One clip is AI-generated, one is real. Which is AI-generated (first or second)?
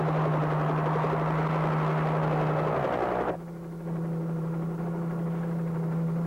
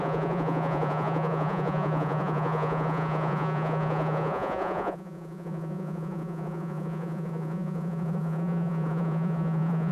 second